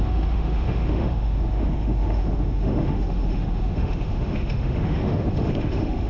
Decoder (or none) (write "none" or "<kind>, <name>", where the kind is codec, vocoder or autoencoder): autoencoder, DAC-VAE